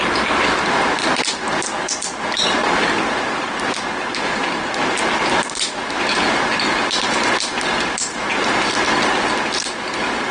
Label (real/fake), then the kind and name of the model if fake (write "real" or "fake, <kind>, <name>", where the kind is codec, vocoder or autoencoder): real